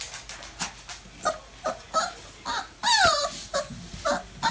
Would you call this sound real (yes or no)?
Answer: yes